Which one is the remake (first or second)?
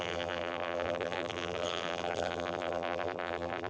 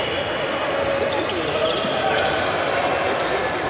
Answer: first